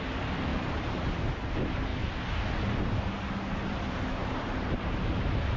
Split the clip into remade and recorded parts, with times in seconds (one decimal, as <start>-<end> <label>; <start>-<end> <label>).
0.0-0.5 recorded; 0.5-1.1 remade; 1.1-4.2 recorded; 4.2-4.8 remade; 4.8-5.6 recorded